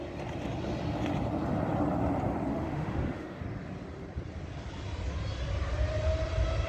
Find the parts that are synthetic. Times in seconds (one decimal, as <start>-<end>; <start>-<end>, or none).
2.5-3.4